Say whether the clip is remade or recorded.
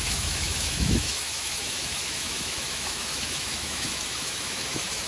remade